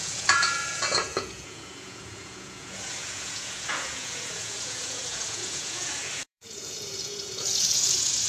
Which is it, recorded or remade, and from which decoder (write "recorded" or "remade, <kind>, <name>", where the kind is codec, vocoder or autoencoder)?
remade, vocoder, Vocos